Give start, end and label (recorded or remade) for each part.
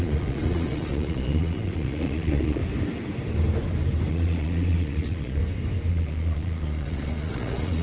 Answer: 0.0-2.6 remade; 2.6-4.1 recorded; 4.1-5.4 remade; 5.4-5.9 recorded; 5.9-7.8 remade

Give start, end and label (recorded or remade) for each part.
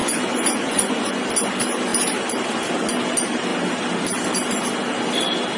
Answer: 0.0-1.2 remade; 1.2-5.6 recorded